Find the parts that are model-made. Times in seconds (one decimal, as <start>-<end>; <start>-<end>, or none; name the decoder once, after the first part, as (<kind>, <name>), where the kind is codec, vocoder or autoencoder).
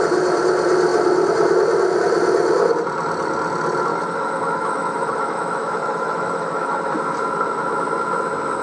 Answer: 3.9-6.7 (autoencoder, DAC-VAE)